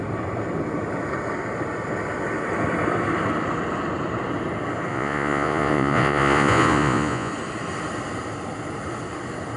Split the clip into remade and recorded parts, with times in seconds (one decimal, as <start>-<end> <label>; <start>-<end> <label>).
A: 0.0-4.9 recorded; 4.9-7.3 remade; 7.3-9.6 recorded

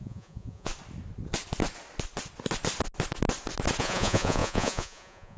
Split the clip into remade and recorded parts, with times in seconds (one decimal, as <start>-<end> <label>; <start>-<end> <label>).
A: 0.0-0.7 remade; 0.7-3.8 recorded; 3.8-5.4 remade